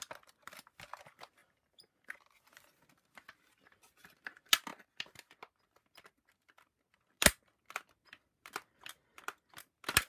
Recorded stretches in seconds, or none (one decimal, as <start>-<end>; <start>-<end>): 0.0-10.1